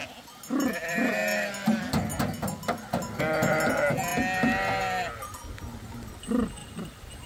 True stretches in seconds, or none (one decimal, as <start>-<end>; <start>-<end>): 0.0-6.6